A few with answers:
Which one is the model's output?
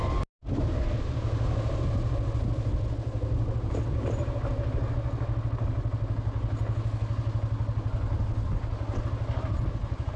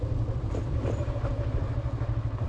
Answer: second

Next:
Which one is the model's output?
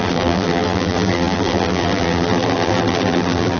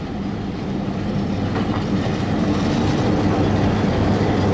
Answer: first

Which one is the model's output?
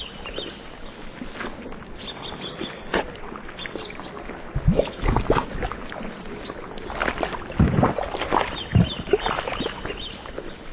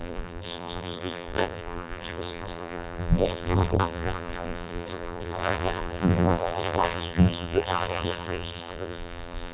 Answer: second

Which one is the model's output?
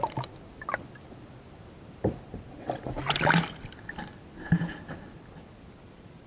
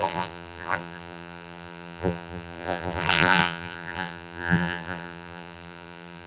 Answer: second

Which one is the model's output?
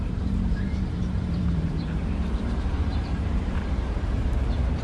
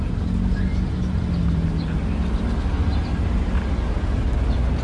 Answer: first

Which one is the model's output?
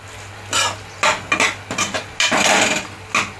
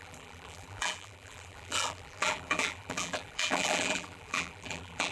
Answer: second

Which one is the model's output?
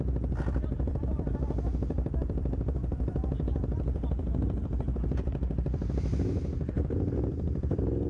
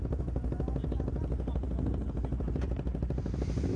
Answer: first